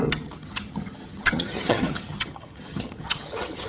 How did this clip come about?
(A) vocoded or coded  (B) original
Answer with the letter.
A